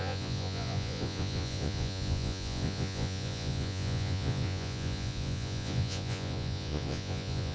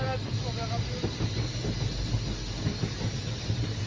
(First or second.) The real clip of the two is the second